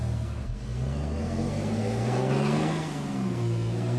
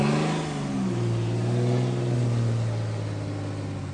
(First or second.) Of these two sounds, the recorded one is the second